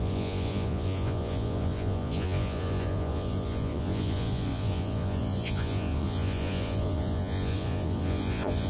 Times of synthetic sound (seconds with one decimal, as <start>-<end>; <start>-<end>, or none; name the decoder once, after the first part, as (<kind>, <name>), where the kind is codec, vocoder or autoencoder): 0.0-8.7 (vocoder, Vocos)